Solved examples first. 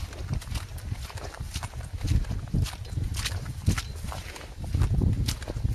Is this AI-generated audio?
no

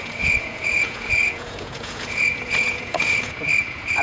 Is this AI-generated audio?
yes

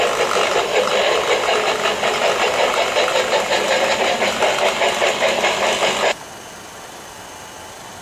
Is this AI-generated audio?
no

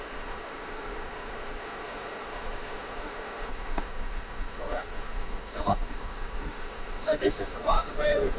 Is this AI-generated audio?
yes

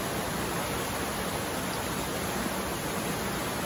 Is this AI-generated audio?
no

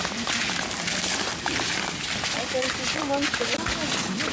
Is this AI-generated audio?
no